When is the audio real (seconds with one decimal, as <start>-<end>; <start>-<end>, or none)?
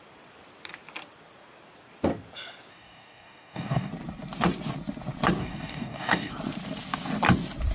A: 0.0-2.7; 3.9-5.4; 6.3-7.7